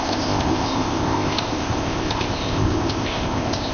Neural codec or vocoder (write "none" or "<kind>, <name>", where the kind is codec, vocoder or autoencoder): codec, ZipCodec